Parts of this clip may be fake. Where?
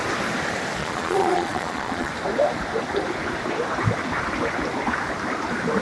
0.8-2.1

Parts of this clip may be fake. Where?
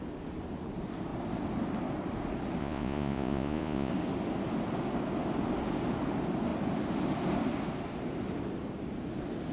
2.6-3.9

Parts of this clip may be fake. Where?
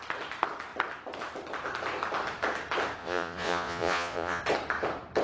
3.0-4.4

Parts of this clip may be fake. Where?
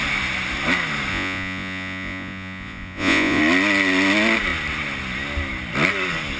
1.1-3.4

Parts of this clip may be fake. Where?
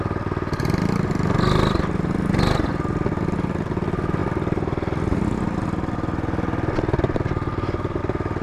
none